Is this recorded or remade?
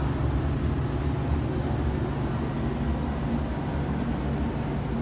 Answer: recorded